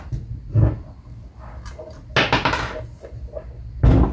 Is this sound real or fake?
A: real